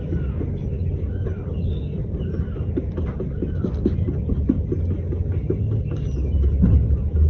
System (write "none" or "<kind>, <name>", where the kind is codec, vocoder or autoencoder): none